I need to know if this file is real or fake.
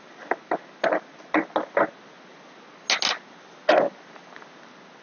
real